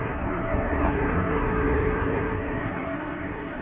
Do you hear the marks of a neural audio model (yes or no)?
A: yes